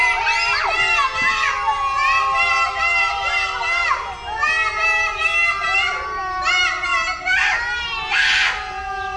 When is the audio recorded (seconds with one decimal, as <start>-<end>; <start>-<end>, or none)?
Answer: 0.0-9.2